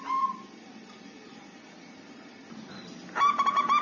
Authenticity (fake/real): fake